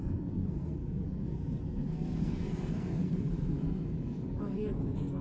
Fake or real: fake